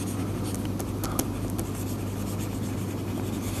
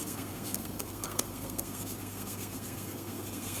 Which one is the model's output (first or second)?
second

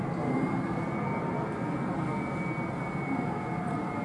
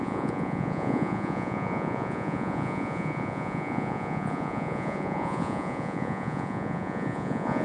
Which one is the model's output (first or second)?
second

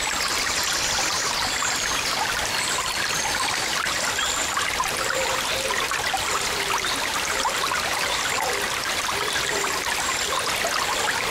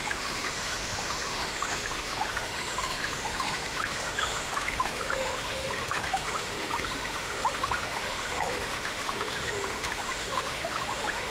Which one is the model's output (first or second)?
second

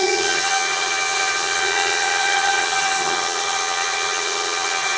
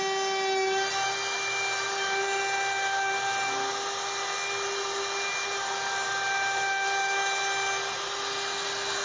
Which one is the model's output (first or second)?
first